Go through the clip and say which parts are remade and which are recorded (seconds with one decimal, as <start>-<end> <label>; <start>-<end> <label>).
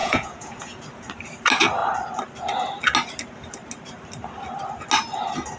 0.0-0.8 remade; 0.8-5.6 recorded